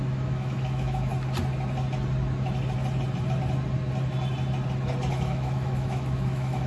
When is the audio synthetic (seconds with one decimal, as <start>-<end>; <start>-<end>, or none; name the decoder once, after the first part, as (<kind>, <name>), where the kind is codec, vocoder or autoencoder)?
0.0-1.1 (autoencoder, DAC-VAE); 5.1-6.7